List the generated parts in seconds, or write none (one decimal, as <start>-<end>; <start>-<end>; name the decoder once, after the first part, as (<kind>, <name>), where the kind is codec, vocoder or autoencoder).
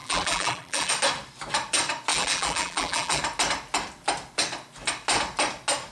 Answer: 0.0-0.9 (vocoder, BigVGAN v2); 2.1-3.2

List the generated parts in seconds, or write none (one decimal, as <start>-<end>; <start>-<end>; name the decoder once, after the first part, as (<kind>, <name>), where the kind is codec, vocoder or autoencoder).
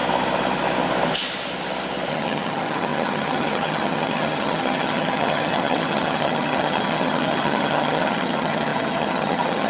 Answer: 2.1-9.7 (vocoder, HiFi-GAN)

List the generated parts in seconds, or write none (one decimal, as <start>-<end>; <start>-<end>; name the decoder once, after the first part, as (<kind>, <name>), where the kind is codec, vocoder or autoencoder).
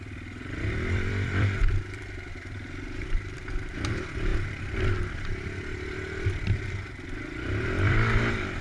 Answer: 0.0-8.6 (vocoder, BigVGAN v2)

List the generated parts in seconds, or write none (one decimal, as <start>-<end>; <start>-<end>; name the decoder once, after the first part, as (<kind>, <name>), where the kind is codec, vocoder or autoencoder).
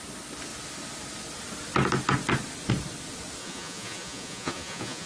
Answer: 3.4-5.1 (vocoder, Vocos)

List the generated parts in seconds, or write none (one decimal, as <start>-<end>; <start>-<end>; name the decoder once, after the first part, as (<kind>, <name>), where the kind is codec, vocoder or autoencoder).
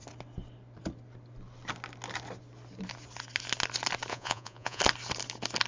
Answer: 4.1-4.8 (vocoder, Vocos)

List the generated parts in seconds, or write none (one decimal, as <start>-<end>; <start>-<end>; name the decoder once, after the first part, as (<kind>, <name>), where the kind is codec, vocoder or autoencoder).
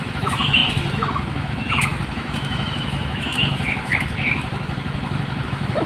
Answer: 0.0-5.9 (autoencoder, DAC-VAE)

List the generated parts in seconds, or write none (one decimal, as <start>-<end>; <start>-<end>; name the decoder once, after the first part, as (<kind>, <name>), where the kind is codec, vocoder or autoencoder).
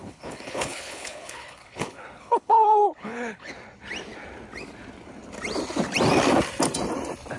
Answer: 0.0-3.5 (codec, HILCodec)